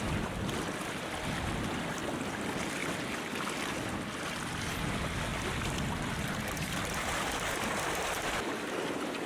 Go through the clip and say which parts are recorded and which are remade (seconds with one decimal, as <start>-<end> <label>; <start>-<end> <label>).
0.0-5.3 recorded; 5.3-6.5 remade; 6.5-9.3 recorded